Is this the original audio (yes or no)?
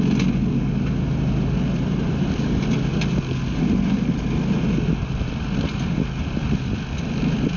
yes